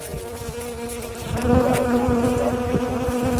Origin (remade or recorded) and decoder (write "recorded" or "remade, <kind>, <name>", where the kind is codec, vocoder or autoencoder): recorded